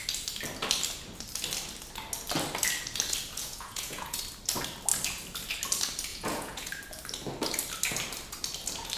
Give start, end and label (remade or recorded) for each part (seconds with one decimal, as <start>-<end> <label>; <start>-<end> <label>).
0.0-3.4 recorded; 3.4-4.2 remade; 4.2-6.1 recorded; 6.1-6.7 remade; 6.7-9.0 recorded